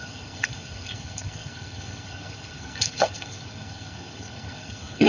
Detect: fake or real fake